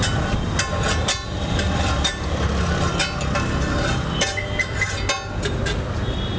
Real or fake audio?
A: real